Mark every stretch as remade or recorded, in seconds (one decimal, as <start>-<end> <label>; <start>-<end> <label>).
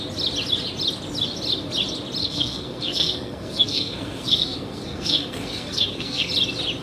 0.0-2.2 recorded; 2.2-6.3 remade; 6.3-6.8 recorded